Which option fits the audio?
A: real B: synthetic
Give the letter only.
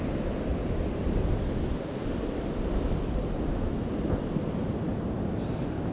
A